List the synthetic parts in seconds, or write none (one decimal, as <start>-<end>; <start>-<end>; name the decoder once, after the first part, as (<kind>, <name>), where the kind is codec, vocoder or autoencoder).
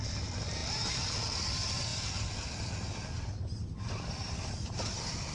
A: 1.9-5.3 (vocoder, BigVGAN v2)